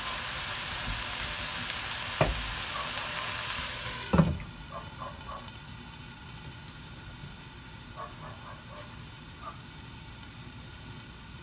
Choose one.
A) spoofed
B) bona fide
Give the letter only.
B